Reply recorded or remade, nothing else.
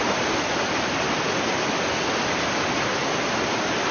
recorded